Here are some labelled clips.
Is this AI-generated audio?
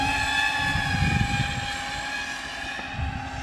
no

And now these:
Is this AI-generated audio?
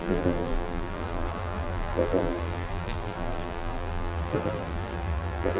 yes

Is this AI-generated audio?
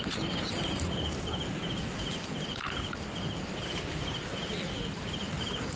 no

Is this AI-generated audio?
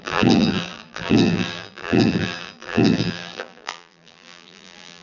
yes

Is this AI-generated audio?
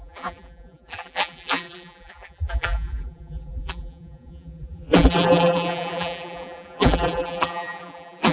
yes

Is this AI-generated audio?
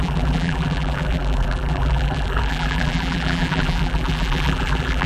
yes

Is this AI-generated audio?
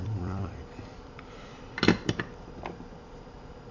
yes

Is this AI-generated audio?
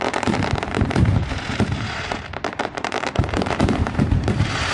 yes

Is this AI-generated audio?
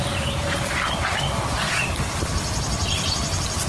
yes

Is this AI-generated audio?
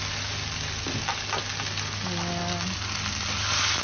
no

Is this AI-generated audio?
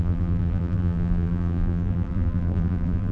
yes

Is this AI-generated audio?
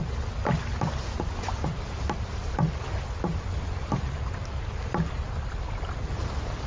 no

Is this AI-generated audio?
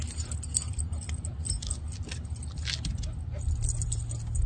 no